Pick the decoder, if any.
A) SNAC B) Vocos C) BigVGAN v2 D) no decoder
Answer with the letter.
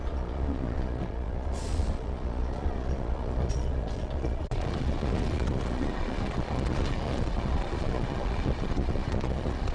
B